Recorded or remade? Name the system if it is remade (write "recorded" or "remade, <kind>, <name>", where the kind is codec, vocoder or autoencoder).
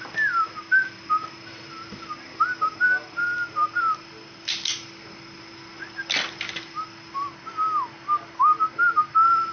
recorded